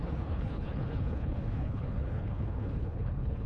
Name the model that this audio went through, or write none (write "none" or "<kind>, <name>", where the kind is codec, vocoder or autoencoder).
codec, HILCodec